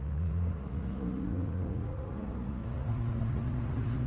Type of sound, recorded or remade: remade